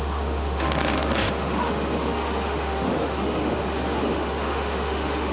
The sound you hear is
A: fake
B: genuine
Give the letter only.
A